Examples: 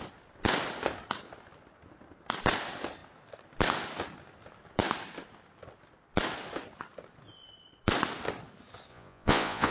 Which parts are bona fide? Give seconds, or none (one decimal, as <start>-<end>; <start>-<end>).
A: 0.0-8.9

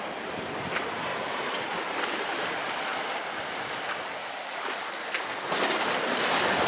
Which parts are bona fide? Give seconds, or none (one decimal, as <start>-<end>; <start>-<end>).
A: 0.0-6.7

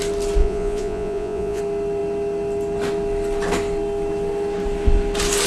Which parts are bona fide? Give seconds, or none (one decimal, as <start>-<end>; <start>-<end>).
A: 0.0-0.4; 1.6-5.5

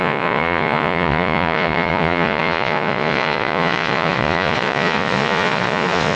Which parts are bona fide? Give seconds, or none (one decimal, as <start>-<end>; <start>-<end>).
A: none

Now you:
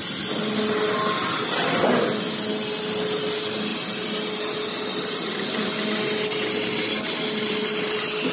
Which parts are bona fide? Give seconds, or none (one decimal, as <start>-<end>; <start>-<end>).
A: 0.0-8.3

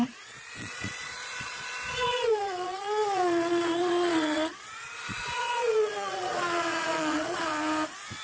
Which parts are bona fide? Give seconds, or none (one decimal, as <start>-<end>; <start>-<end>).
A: 7.5-8.2

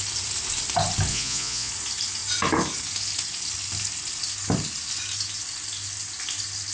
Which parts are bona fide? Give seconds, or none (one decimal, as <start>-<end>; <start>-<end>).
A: 0.0-1.1; 1.7-6.7